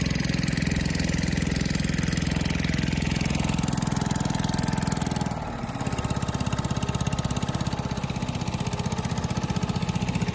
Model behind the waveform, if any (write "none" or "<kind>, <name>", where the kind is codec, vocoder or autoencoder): none